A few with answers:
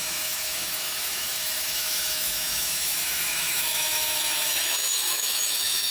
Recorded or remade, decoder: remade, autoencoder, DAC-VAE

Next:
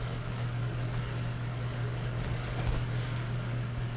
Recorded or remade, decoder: remade, codec, DAC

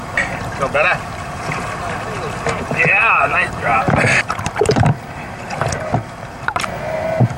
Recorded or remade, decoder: remade, vocoder, BigVGAN v2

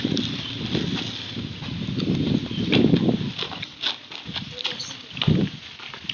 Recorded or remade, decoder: recorded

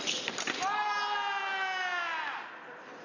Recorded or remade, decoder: recorded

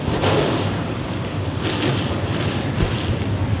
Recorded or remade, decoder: remade, vocoder, BigVGAN v2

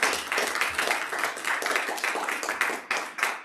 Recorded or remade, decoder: recorded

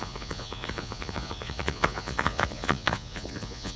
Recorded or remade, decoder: remade, vocoder, Vocos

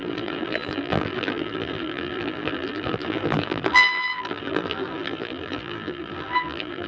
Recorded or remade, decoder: remade, vocoder, BigVGAN v2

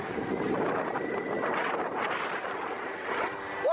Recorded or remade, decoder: remade, vocoder, BigVGAN v2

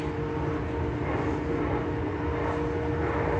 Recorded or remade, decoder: recorded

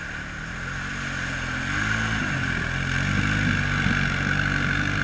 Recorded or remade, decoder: recorded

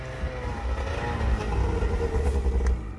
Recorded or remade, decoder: recorded